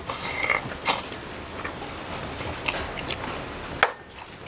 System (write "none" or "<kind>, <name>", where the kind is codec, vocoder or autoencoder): none